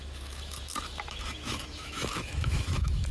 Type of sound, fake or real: fake